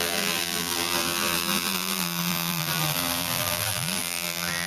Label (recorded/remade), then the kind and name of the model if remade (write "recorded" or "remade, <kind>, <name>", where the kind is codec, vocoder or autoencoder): remade, vocoder, BigVGAN v2